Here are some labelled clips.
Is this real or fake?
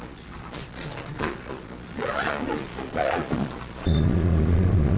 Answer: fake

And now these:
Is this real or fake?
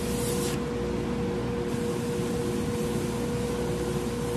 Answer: real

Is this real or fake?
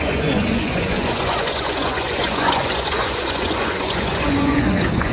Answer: fake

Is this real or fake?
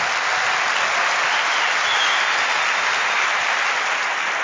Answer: real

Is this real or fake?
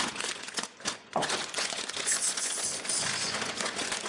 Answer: fake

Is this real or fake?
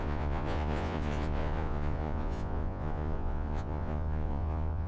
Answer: fake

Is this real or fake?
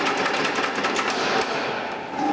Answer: real